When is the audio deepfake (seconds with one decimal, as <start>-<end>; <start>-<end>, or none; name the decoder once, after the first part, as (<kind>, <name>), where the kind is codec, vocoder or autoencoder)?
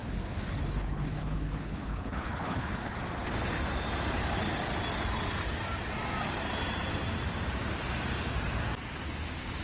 0.0-3.0 (codec, HILCodec)